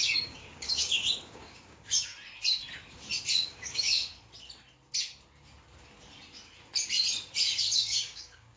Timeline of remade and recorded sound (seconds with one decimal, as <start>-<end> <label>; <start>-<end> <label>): 0.0-2.1 remade; 2.1-3.3 recorded; 3.3-4.1 remade; 4.1-7.4 recorded; 7.4-8.6 remade

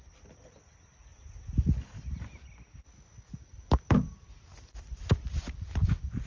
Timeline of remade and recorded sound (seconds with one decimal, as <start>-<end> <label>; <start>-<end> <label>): 0.0-6.3 recorded

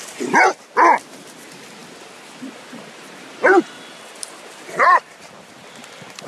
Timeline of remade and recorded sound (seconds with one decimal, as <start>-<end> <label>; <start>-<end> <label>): 0.0-1.8 recorded; 1.8-5.6 remade; 5.6-6.3 recorded